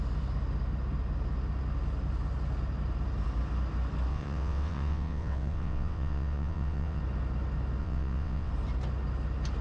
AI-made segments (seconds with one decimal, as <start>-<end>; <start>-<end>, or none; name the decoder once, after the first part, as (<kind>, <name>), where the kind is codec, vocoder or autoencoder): 4.1-7.0 (vocoder, WaveNeXt); 7.8-8.5